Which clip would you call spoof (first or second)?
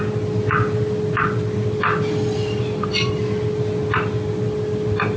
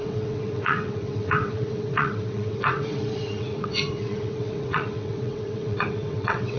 second